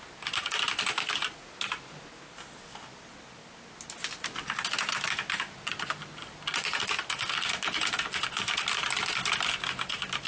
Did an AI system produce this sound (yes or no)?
no